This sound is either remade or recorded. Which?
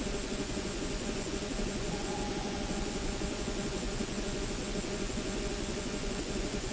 remade